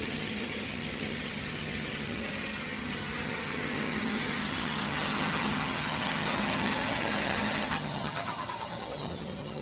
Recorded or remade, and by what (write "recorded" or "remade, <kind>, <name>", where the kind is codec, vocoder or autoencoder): remade, vocoder, HiFi-GAN